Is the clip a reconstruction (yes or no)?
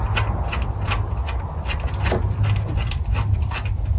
no